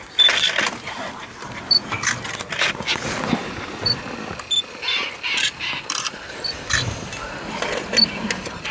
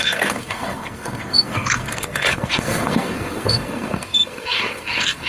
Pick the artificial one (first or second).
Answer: second